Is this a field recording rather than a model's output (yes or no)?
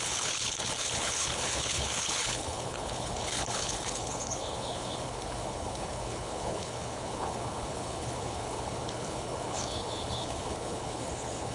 no